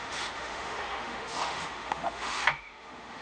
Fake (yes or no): yes